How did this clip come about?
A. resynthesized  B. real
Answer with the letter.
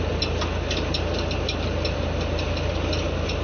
B